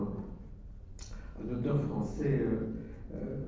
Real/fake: real